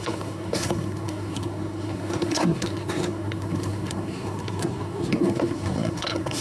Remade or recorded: remade